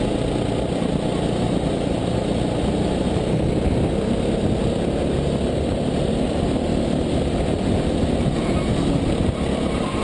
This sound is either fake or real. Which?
real